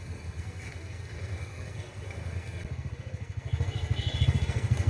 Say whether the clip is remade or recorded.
remade